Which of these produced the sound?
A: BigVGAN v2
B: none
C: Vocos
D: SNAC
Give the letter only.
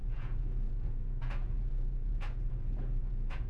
C